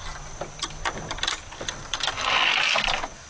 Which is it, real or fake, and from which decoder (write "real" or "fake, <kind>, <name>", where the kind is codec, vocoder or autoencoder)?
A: real